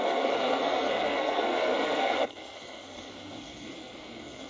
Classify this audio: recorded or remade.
remade